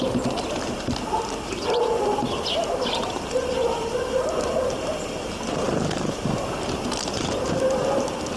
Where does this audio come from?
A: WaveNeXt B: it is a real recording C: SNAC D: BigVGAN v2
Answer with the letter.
B